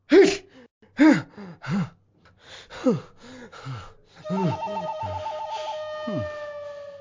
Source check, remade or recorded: recorded